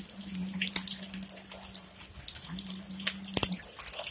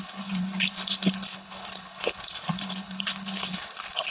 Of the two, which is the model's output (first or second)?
second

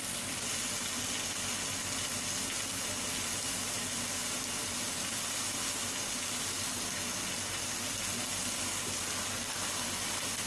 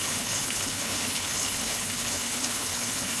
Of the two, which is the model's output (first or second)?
second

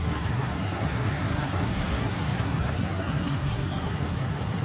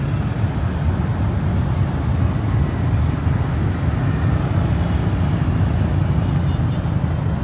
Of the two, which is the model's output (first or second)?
first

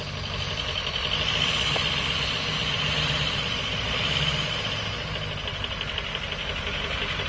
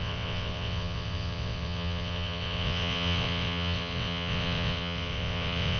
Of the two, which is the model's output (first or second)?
second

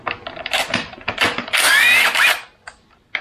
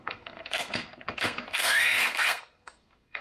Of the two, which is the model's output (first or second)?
second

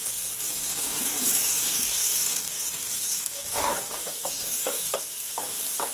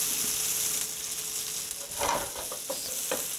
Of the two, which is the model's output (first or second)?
first